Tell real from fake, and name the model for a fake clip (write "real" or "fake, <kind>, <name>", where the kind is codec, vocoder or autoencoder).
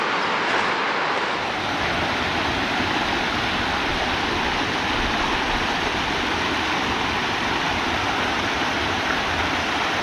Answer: real